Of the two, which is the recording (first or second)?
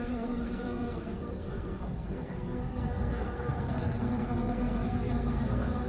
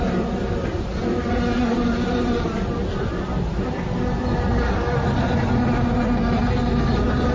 second